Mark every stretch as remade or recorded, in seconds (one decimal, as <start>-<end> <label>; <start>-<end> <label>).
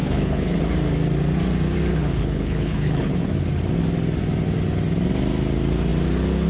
0.0-0.6 remade; 0.6-1.9 recorded; 1.9-3.3 remade; 3.3-6.5 recorded